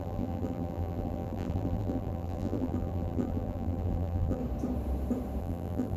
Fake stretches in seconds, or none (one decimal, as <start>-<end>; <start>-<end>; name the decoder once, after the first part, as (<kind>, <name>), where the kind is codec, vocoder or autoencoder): 0.0-4.4 (vocoder, BigVGAN v2); 5.4-6.0

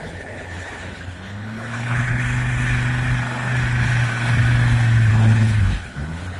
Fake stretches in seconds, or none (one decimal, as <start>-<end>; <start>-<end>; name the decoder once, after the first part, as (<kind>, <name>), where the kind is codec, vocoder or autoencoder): 0.0-2.2 (codec, HILCodec); 5.1-6.4

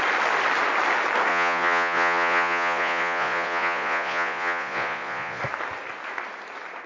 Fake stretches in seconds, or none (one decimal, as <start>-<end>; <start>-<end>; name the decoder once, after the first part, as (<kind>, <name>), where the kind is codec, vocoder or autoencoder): 1.3-5.4 (vocoder, Vocos)